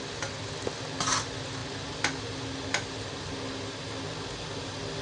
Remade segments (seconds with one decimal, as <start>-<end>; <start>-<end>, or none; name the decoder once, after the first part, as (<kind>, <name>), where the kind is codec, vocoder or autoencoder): none